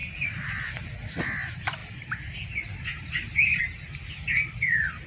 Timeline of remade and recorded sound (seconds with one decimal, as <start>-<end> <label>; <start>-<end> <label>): 0.0-0.5 remade; 0.5-1.8 recorded; 1.8-3.6 remade; 3.6-5.1 recorded